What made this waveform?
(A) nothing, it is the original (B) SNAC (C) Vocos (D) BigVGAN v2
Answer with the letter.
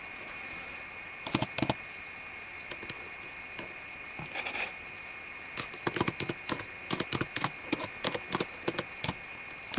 A